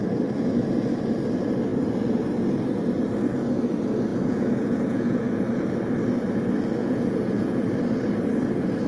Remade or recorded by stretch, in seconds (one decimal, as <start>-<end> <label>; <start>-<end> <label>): 0.0-4.1 recorded; 4.1-5.4 remade; 5.4-6.8 recorded; 6.8-7.6 remade; 7.6-8.9 recorded